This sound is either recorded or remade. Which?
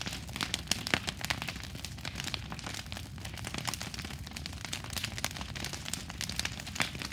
recorded